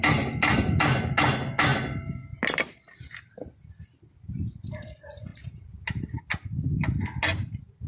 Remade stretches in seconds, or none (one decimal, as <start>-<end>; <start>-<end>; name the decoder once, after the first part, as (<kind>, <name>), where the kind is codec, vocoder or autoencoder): none